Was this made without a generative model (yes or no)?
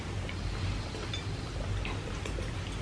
yes